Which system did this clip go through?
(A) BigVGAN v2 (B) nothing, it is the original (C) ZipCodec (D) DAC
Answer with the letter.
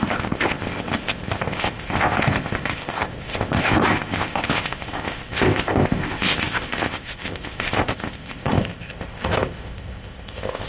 C